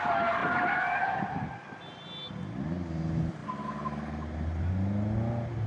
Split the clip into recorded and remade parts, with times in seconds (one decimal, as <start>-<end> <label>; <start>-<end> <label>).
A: 0.0-5.7 recorded